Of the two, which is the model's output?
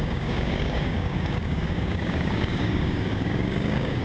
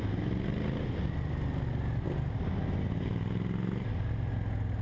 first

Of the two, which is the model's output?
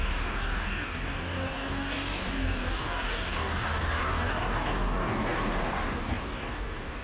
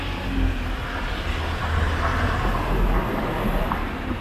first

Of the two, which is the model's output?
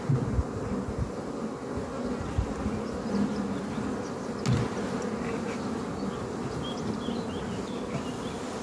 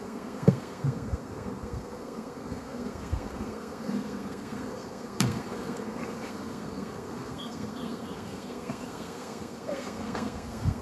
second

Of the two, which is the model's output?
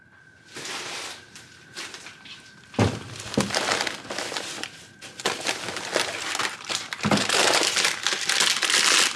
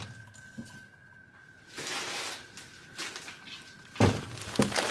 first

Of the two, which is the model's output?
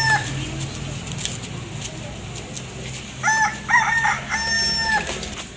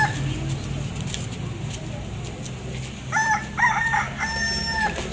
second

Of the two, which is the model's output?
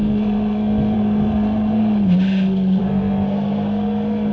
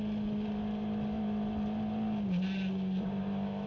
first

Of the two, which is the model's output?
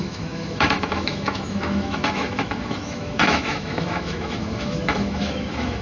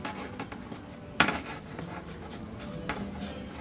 first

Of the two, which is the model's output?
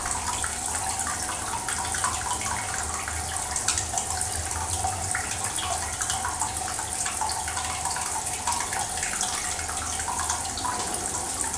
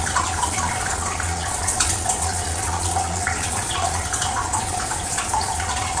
second